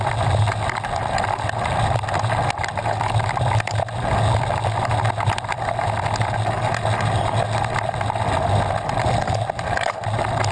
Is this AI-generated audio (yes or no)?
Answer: no